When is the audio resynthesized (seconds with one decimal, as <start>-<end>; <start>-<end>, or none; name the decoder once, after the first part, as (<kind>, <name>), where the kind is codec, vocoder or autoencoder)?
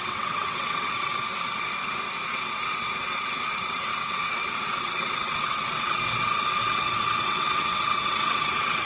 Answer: 0.0-1.1 (vocoder, WaveNeXt); 2.3-8.9